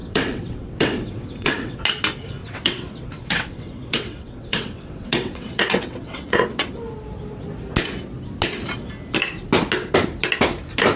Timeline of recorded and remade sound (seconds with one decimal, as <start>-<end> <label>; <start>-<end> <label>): 0.0-1.8 remade; 1.8-2.4 recorded; 2.4-6.7 remade; 6.7-11.0 recorded